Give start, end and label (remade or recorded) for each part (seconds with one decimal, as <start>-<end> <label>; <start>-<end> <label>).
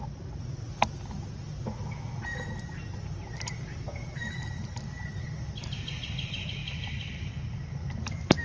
0.0-6.6 recorded; 6.6-7.3 remade; 7.3-8.4 recorded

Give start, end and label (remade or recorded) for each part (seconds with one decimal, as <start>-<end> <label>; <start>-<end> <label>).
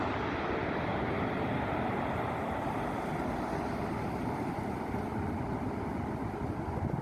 0.0-0.9 recorded; 0.9-2.3 remade; 2.3-7.0 recorded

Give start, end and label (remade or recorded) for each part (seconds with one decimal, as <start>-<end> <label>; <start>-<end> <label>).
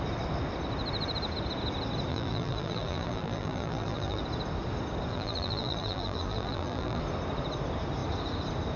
0.0-2.1 recorded; 2.1-4.2 remade; 4.2-5.1 recorded; 5.1-7.0 remade; 7.0-8.8 recorded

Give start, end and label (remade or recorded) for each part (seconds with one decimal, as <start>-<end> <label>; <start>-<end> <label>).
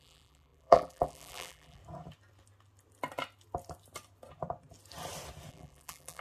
0.0-1.8 remade; 1.8-5.5 recorded; 5.5-6.2 remade